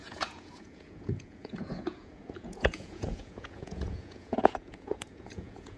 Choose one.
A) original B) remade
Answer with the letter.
B